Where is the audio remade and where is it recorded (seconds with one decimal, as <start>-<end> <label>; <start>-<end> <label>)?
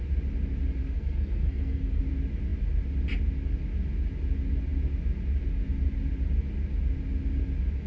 0.0-0.8 recorded; 0.8-2.0 remade; 2.0-7.9 recorded